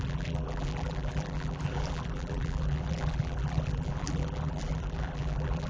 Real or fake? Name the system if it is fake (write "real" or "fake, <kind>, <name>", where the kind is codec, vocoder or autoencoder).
fake, vocoder, BigVGAN v2